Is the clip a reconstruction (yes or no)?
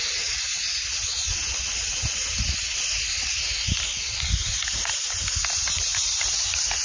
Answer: no